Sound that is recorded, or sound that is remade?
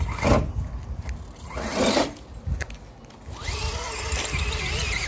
recorded